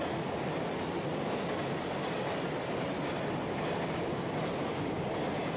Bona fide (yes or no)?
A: yes